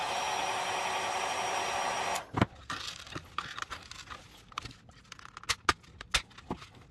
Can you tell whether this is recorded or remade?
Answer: recorded